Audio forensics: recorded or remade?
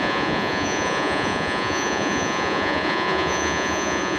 remade